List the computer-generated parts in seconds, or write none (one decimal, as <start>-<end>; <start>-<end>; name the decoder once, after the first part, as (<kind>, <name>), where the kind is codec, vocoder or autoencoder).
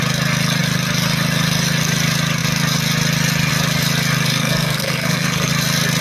4.3-5.5 (codec, SNAC)